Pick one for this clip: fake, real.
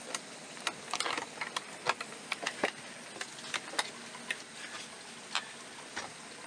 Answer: real